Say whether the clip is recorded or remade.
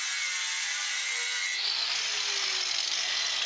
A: recorded